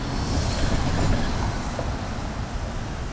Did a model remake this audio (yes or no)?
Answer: no